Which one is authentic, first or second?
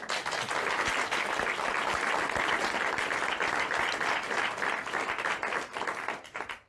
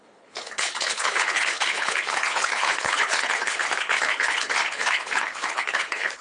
first